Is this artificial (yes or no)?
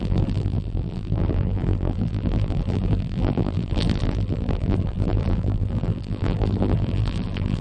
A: yes